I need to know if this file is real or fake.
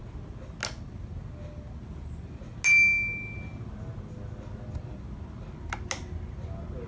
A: real